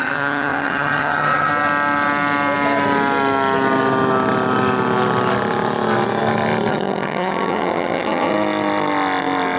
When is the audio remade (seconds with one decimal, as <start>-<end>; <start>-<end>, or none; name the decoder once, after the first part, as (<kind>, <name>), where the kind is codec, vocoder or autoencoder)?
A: 0.0-1.5 (vocoder, HiFi-GAN); 6.7-8.3